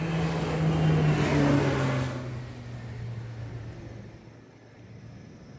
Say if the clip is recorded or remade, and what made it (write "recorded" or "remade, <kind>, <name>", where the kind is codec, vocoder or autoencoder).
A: recorded